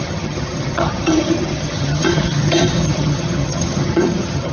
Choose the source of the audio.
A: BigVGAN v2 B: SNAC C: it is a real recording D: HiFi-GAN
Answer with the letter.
D